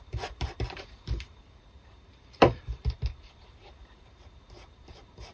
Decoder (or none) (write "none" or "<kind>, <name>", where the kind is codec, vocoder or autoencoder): vocoder, BigVGAN v2